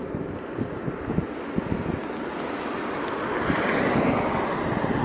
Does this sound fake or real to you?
real